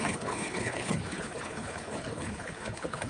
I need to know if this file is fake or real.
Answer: fake